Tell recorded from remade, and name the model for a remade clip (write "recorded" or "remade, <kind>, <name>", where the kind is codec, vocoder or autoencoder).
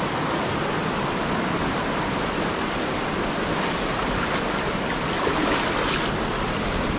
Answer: recorded